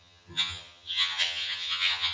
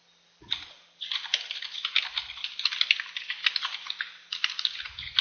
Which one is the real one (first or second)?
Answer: second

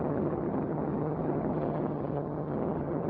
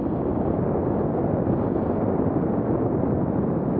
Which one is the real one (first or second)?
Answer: second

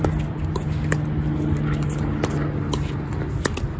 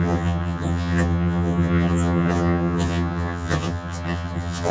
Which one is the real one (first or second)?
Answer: first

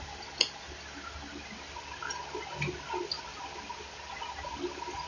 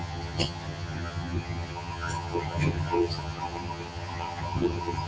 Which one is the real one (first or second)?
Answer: first